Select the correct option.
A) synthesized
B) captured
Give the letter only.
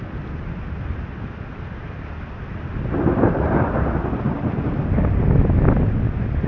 B